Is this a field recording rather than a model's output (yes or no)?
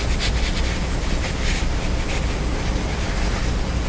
yes